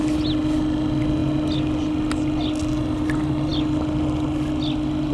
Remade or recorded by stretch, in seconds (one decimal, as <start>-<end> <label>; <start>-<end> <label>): 0.0-5.1 recorded